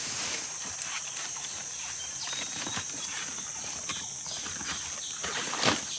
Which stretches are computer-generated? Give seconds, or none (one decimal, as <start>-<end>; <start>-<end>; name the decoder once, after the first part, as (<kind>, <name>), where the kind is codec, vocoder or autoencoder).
0.0-6.0 (vocoder, BigVGAN v2)